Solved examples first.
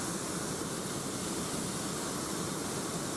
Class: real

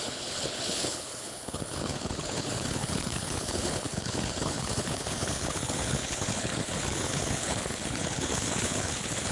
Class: fake